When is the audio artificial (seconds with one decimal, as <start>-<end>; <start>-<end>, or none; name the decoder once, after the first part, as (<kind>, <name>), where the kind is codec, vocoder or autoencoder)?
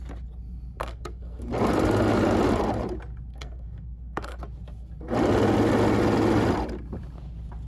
0.8-1.5 (codec, SNAC); 3.3-4.4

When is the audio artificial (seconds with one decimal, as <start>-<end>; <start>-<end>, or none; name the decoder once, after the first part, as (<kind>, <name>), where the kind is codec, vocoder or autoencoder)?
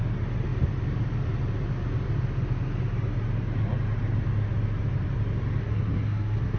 5.6-6.6 (codec, SNAC)